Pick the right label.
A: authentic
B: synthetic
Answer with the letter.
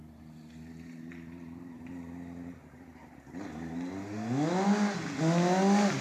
A